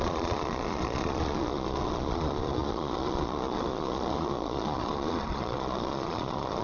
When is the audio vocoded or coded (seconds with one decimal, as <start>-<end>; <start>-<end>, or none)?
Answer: 0.0-6.6